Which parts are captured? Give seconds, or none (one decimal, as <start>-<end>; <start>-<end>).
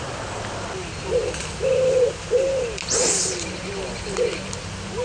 0.0-5.0